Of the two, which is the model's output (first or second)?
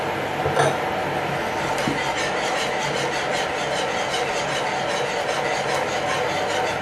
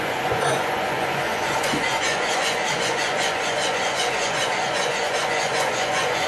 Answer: second